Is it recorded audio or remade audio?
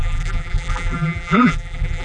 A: remade